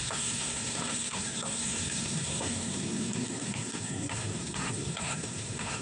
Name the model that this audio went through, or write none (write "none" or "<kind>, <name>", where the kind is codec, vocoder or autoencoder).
codec, SNAC